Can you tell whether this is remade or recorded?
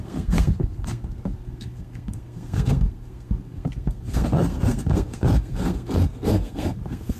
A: remade